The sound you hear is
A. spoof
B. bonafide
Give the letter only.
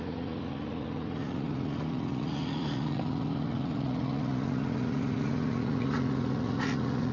A